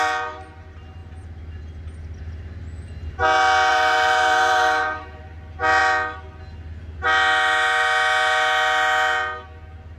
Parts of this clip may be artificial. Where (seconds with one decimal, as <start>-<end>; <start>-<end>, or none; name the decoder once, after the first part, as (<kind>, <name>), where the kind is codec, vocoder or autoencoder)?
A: 3.7-5.2 (vocoder, BigVGAN v2)

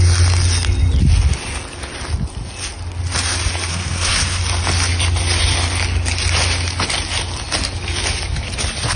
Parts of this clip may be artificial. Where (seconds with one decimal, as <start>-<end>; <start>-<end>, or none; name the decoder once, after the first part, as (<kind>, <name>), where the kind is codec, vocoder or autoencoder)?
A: 3.7-4.4 (codec, SNAC)

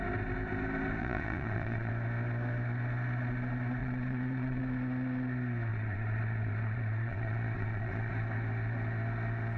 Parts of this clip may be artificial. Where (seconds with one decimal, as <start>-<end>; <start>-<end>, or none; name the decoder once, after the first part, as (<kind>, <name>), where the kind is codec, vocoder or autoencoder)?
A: 1.0-1.9 (vocoder, Vocos); 3.8-4.6; 5.7-8.1

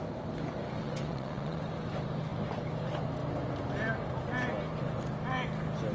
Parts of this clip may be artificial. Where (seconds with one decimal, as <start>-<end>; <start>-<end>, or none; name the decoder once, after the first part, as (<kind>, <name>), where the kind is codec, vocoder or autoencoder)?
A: 0.8-1.6 (vocoder, WaveNeXt)

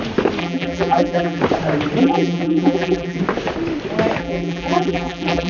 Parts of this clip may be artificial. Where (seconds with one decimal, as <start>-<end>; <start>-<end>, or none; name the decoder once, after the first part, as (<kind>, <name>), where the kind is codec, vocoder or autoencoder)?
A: 0.4-1.4 (vocoder, BigVGAN v2); 2.0-3.2; 4.2-5.5

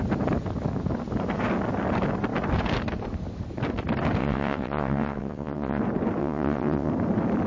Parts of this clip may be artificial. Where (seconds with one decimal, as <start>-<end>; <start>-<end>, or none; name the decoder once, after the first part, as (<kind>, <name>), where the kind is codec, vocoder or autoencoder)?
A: 4.2-5.8 (vocoder, WaveNeXt); 6.2-6.9

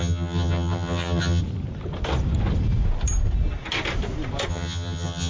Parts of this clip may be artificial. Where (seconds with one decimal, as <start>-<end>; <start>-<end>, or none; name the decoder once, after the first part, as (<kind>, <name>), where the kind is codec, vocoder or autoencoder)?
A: 0.0-1.4 (vocoder, HiFi-GAN); 4.5-5.3

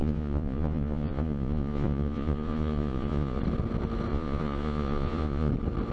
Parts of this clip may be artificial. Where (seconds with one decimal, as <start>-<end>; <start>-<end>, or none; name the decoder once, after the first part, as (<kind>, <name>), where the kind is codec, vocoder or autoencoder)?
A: 0.0-3.4 (vocoder, Vocos); 4.1-5.5